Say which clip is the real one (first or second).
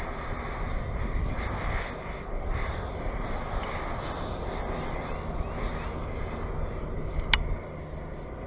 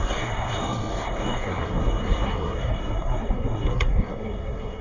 first